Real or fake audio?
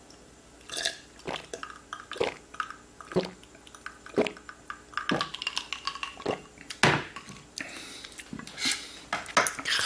real